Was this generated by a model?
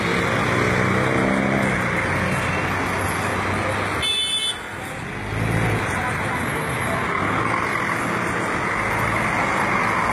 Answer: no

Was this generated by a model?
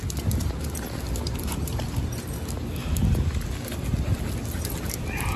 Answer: no